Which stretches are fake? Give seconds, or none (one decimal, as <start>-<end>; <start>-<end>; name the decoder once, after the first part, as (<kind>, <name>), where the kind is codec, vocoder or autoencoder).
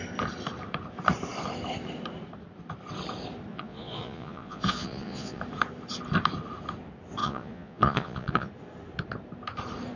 3.5-5.4 (vocoder, Vocos); 7.2-8.5